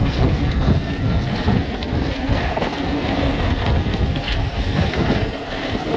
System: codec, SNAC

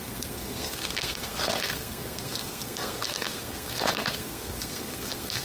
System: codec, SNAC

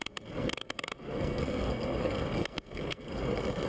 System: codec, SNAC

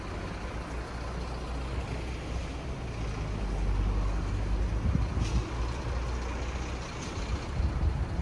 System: none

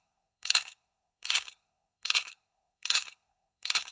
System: codec, SNAC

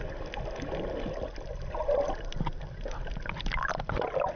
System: none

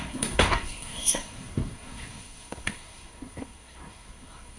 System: codec, SNAC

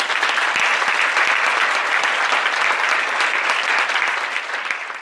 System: none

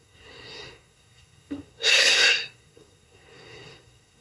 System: codec, SNAC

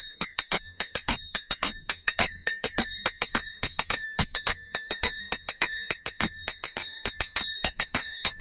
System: codec, SNAC